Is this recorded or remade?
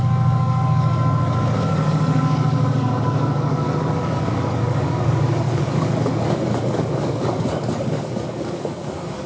remade